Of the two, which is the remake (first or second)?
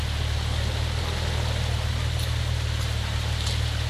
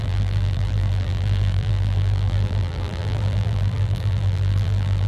second